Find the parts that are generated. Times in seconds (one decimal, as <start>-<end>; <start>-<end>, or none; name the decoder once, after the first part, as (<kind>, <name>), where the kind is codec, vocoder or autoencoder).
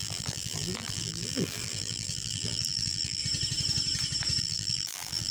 0.0-3.2 (vocoder, BigVGAN v2); 4.4-5.3